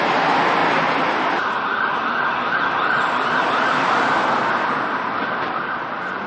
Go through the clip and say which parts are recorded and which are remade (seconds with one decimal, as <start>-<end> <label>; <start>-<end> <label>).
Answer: 0.0-6.3 recorded